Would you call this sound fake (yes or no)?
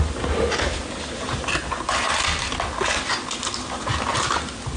no